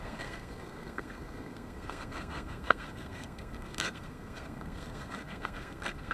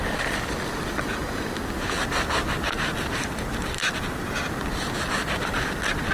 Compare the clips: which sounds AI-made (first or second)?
first